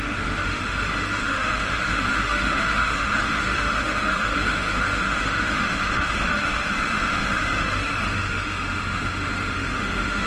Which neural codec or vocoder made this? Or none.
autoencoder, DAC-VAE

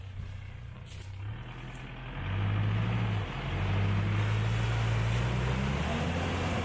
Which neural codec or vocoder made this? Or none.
none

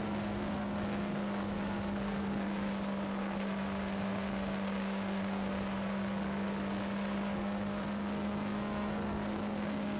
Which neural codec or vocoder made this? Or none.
codec, SNAC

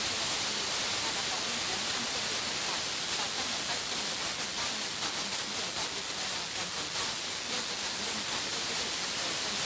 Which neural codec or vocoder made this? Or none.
none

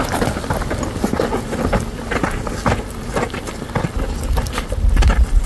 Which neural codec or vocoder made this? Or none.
none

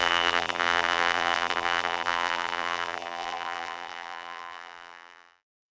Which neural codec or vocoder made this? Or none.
vocoder, BigVGAN v2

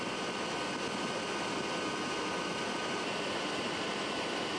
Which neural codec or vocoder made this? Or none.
none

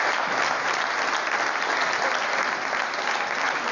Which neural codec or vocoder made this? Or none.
none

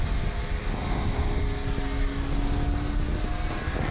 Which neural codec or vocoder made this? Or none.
none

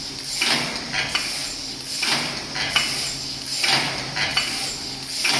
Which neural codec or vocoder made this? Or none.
none